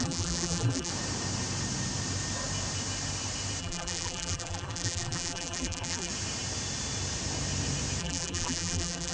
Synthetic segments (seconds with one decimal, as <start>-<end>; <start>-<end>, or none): 0.0-0.9; 3.6-6.1; 8.0-9.1